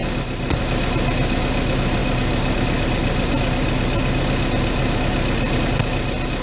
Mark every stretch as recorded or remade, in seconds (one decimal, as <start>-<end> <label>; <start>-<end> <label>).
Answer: 0.0-6.4 recorded